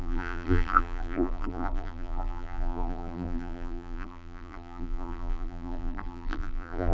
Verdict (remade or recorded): remade